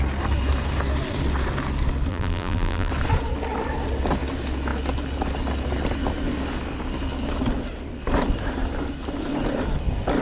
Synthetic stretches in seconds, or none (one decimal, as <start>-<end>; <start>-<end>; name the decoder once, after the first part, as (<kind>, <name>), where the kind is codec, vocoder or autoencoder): 2.1-2.9 (vocoder, BigVGAN v2)